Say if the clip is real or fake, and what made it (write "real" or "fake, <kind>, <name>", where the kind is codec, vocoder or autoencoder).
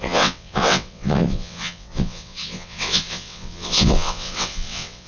fake, vocoder, WaveNeXt